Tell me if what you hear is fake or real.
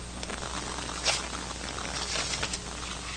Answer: real